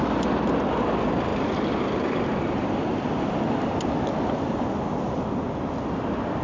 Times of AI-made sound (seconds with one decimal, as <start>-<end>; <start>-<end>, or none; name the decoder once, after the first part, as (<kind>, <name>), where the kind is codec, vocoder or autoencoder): none